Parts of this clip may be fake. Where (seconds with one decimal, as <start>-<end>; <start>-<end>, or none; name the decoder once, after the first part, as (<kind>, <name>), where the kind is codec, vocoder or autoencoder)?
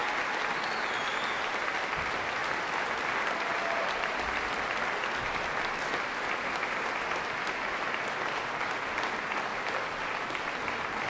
none